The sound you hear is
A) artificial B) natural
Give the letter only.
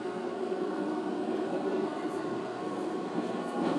A